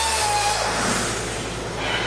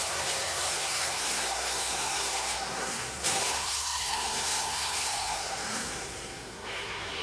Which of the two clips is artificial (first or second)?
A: second